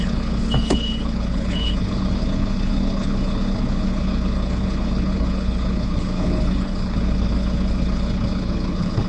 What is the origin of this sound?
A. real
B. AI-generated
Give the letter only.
B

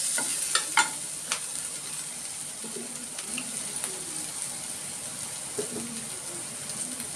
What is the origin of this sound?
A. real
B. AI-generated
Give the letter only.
A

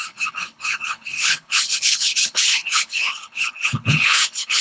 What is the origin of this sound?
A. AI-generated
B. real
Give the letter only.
A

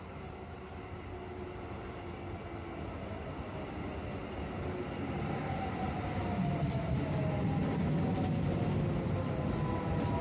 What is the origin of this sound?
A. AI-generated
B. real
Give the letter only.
B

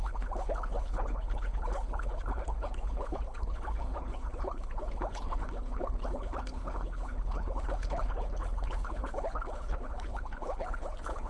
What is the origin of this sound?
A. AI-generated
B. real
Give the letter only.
A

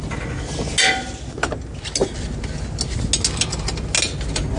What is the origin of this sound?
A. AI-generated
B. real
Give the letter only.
B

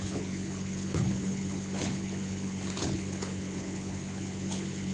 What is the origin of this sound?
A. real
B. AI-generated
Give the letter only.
B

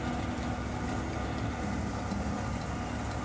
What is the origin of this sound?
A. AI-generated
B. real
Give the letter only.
B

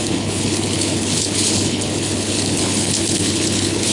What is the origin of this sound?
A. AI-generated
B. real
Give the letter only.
A